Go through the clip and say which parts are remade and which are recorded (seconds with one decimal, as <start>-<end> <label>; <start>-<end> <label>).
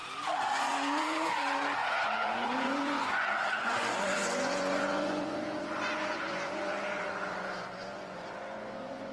0.0-0.5 recorded; 0.5-9.1 remade